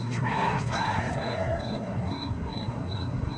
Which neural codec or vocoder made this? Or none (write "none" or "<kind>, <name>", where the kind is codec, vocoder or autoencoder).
codec, SNAC